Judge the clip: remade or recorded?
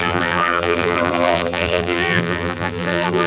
remade